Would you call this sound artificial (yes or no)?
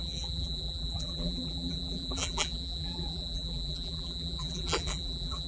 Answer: yes